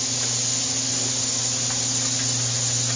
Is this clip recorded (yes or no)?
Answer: yes